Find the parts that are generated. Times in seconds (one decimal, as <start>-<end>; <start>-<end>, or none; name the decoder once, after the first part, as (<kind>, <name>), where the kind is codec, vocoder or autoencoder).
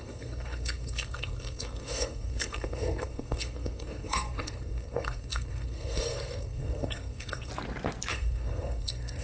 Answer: 0.0-7.5 (codec, SNAC); 8.1-9.2